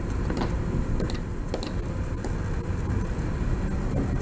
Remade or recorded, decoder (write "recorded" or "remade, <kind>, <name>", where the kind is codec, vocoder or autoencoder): recorded